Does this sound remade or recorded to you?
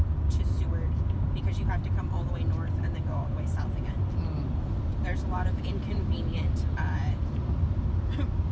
recorded